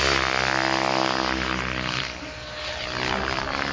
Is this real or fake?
real